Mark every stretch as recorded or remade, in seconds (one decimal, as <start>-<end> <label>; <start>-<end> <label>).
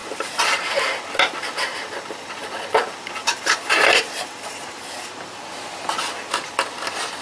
0.0-0.7 remade; 0.7-3.2 recorded; 3.2-5.5 remade; 5.5-7.2 recorded